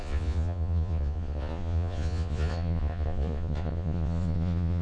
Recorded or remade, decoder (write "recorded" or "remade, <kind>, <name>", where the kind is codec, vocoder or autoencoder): remade, vocoder, Vocos